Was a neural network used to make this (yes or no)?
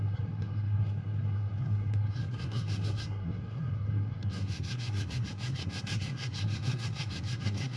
yes